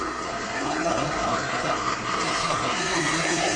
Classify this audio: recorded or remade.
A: remade